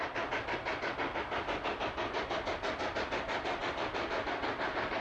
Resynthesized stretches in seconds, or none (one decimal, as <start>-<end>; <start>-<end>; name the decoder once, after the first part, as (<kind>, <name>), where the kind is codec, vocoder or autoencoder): none